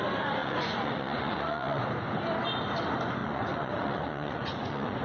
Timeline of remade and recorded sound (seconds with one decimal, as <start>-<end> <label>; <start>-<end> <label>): 0.0-0.4 recorded; 0.4-1.8 remade; 1.8-3.2 recorded; 3.2-5.0 remade